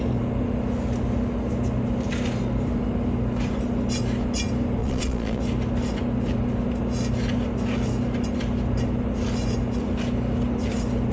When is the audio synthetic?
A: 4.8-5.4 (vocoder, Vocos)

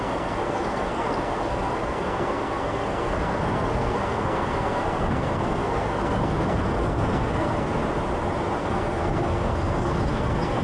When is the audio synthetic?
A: 0.0-7.8 (codec, SNAC); 8.6-10.6

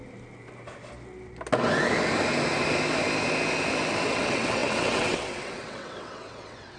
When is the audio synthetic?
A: 4.1-6.8 (vocoder, WaveNeXt)

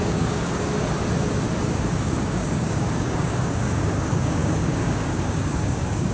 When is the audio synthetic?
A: 0.0-0.7 (codec, DAC); 1.9-6.1

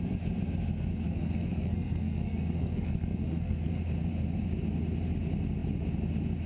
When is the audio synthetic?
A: 0.9-3.8 (codec, SNAC)

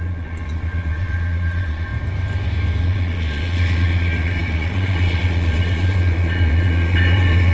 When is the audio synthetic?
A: 0.0-1.9 (vocoder, Vocos); 2.8-7.5

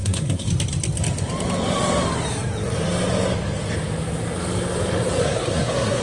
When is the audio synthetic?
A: 0.0-0.5 (codec, SNAC); 5.2-6.0

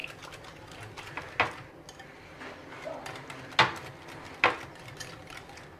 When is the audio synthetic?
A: 5.2-5.8 (vocoder, BigVGAN v2)